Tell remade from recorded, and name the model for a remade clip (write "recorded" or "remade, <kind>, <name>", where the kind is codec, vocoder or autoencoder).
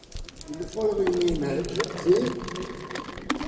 recorded